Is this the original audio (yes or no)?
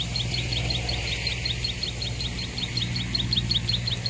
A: yes